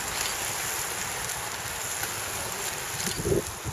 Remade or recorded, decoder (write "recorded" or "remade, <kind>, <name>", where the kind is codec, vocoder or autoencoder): recorded